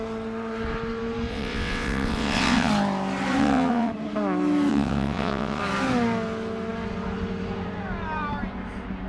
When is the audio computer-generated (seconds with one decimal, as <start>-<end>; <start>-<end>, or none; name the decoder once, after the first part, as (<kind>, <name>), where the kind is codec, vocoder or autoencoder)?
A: 1.3-2.7 (vocoder, WaveNeXt); 3.4-3.9; 4.7-5.6